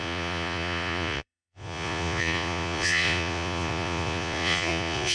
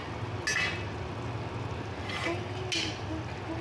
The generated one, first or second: first